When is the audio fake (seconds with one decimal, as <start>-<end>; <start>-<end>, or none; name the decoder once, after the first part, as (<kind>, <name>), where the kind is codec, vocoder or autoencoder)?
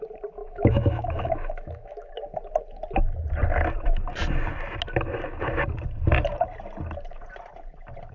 0.4-2.1 (autoencoder, DAC-VAE)